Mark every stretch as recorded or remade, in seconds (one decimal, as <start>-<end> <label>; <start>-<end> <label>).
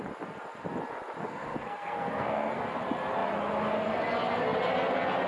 0.0-1.2 recorded; 1.2-2.6 remade; 2.6-5.3 recorded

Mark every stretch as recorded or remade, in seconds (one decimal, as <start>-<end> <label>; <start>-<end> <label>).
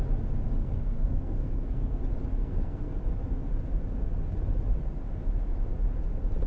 0.0-0.6 recorded; 0.6-2.0 remade; 2.0-2.4 recorded; 2.4-3.0 remade; 3.0-6.5 recorded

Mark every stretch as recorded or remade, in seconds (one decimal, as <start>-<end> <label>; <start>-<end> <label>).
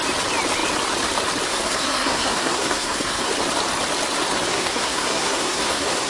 0.0-1.5 recorded; 1.5-3.3 remade; 3.3-4.5 recorded; 4.5-6.1 remade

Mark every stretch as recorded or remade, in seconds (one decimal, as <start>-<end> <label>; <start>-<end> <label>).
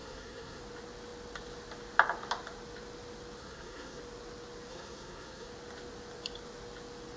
0.0-0.6 remade; 0.6-3.4 recorded; 3.4-4.0 remade; 4.0-4.7 recorded; 4.7-5.5 remade; 5.5-7.2 recorded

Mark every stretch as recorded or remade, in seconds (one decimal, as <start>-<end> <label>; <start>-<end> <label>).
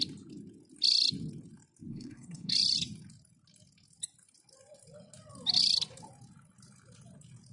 0.0-1.9 recorded; 1.9-2.5 remade; 2.5-7.5 recorded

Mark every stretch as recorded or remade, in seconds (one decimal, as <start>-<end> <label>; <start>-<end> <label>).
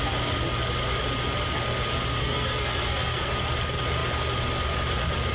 0.0-2.2 recorded; 2.2-3.3 remade; 3.3-5.3 recorded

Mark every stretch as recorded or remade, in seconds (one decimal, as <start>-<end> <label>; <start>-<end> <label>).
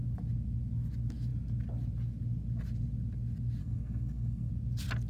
0.0-3.6 recorded; 3.6-4.5 remade; 4.5-5.1 recorded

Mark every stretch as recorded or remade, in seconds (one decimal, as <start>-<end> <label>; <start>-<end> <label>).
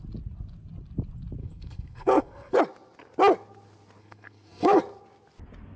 0.0-1.4 recorded; 1.4-2.6 remade; 2.6-4.0 recorded; 4.0-4.8 remade; 4.8-5.8 recorded